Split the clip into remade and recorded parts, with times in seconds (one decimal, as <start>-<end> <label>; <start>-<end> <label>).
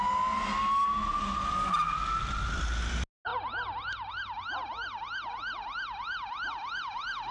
0.0-7.3 recorded